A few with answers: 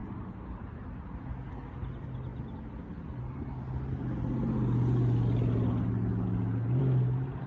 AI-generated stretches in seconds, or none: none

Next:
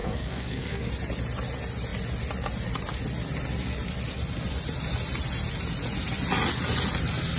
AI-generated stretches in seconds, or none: 0.0-0.9

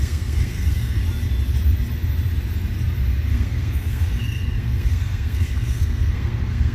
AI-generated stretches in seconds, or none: 0.0-1.0; 3.3-6.7

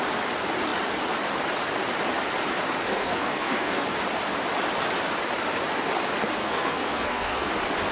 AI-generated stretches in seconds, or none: 2.9-4.0; 6.4-7.5

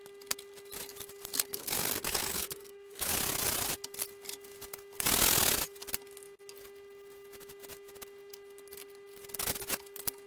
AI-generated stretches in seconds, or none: 1.5-3.1

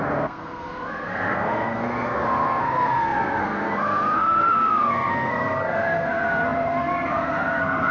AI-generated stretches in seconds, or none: 0.0-7.9

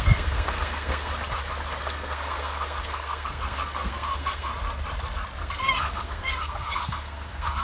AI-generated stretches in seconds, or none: 0.0-1.1; 1.8-4.5; 5.4-7.6

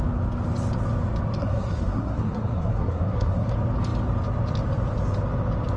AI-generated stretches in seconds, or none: 1.4-3.5